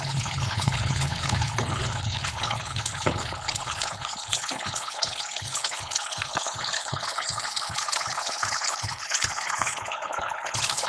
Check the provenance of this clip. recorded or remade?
remade